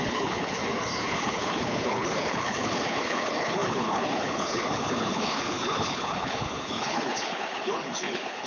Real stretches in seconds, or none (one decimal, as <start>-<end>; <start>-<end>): 0.6-1.1